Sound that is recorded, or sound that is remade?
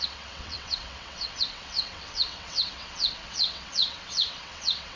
remade